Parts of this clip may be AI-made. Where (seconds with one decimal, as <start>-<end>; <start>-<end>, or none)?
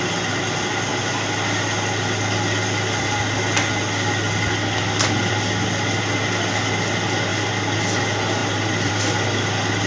none